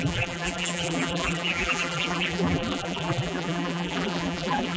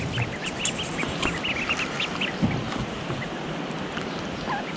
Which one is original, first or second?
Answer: second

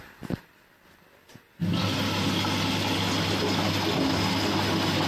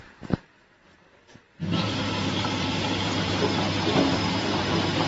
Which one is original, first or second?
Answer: first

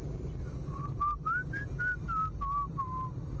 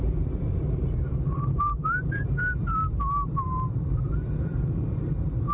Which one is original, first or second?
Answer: first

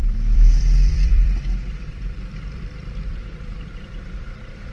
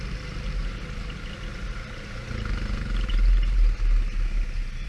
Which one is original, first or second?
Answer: second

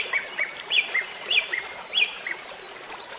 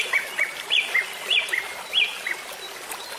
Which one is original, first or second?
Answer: second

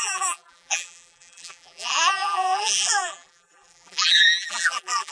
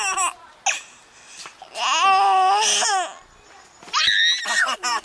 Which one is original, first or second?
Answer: second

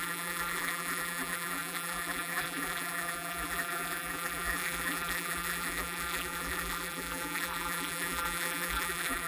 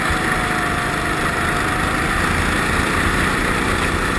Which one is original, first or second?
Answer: second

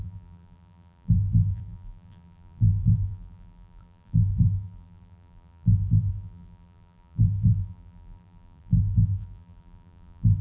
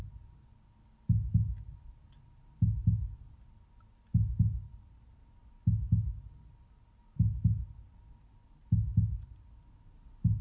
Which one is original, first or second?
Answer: second